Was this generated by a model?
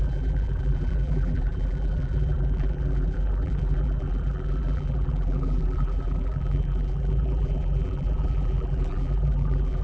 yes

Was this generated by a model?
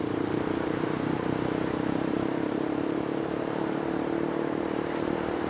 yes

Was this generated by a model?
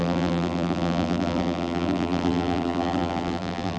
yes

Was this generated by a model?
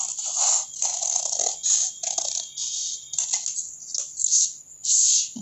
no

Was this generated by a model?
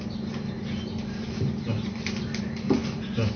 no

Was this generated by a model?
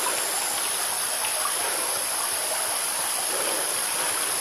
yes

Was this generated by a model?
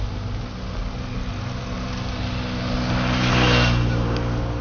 no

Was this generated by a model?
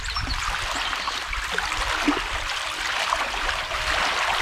no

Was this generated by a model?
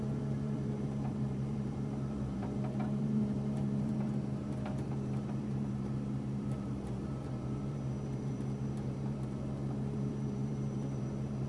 yes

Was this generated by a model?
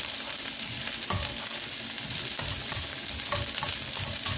no